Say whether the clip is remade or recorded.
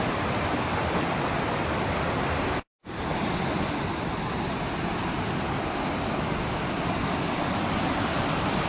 recorded